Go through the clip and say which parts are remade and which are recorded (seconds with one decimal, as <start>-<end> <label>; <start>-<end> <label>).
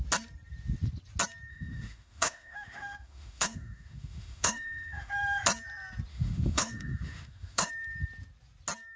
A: 0.0-1.5 recorded; 1.5-5.1 remade; 5.1-6.1 recorded; 6.1-7.7 remade; 7.7-9.0 recorded